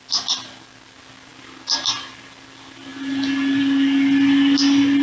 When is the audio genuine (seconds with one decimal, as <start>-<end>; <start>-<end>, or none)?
0.0-5.0